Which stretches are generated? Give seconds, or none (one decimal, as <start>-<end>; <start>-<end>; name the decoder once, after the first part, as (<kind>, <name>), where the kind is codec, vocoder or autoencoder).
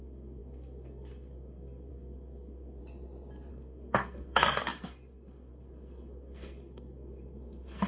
0.0-2.8 (codec, SNAC); 3.5-7.9